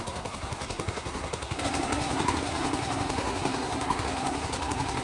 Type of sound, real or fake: fake